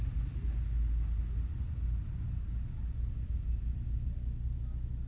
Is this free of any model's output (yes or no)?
yes